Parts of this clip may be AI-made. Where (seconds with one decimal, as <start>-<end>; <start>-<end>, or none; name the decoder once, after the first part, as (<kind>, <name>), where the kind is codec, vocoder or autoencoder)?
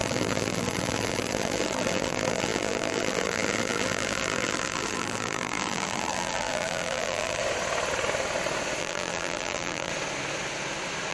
0.0-7.4 (vocoder, BigVGAN v2); 8.8-9.9